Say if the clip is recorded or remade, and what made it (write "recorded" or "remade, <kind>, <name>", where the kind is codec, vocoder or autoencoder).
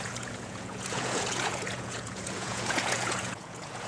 remade, vocoder, Vocos